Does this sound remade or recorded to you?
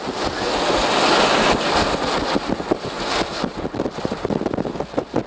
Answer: recorded